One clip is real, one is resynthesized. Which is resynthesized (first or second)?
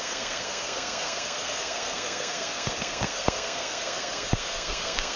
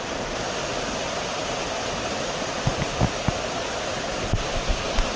first